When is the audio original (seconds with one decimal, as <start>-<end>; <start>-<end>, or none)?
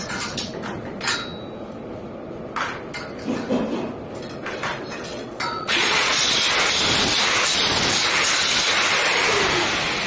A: 0.0-5.1; 6.3-10.1